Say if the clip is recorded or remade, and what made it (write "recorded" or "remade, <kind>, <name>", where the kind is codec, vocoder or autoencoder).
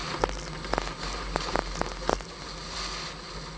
recorded